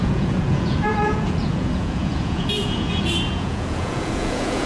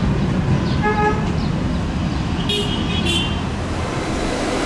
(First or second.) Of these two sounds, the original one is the second